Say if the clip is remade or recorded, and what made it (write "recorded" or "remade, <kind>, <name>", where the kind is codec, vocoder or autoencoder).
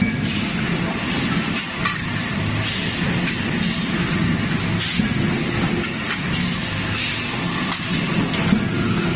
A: recorded